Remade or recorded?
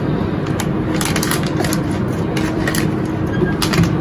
recorded